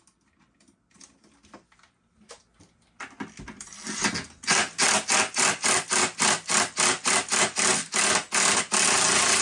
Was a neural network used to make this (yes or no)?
no